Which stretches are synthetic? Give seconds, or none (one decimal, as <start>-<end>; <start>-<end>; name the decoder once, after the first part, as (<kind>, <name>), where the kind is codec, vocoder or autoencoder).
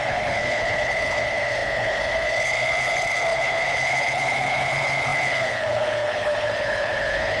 0.0-7.4 (codec, HILCodec)